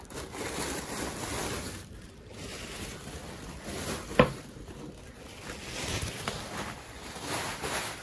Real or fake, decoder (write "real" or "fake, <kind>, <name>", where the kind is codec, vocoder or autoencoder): real